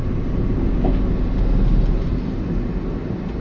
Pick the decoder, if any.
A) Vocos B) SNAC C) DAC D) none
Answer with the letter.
D